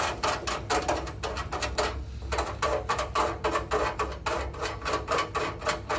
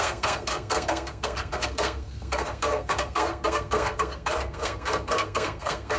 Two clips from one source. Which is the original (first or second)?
first